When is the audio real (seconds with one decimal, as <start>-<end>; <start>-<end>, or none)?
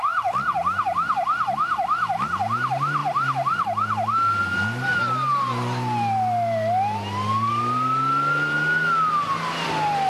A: 0.0-10.1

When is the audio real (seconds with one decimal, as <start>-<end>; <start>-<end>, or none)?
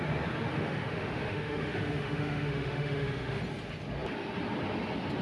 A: 0.0-0.5; 3.4-5.2